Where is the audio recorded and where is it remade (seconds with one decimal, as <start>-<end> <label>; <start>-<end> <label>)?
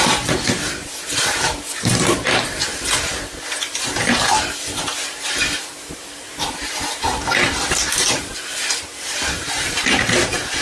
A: 0.0-10.6 remade